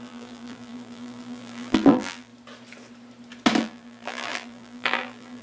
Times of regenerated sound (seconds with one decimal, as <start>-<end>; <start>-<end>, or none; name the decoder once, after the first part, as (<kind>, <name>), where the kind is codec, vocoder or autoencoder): 0.0-2.3 (vocoder, BigVGAN v2); 3.6-5.4